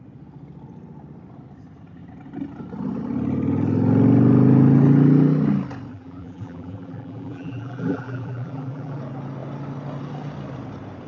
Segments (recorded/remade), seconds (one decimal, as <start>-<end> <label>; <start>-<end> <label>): 0.0-5.9 recorded; 5.9-9.0 remade; 9.0-11.1 recorded